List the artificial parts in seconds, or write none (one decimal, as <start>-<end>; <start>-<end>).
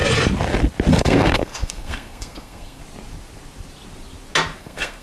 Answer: 0.9-2.8; 4.6-5.0